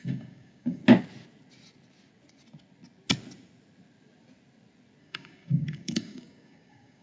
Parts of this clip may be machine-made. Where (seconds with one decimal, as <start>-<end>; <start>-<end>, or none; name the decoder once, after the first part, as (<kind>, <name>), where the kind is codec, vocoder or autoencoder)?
0.0-0.8 (codec, DAC); 5.0-7.0